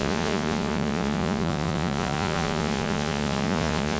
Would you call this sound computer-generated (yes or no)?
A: yes